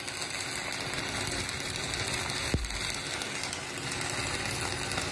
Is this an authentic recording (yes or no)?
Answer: yes